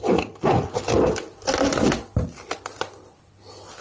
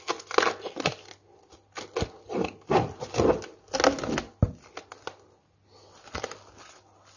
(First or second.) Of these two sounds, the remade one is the first